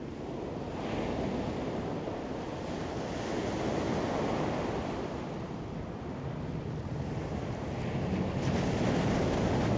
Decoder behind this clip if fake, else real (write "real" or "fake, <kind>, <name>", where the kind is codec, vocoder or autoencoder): real